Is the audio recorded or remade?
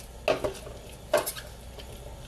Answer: recorded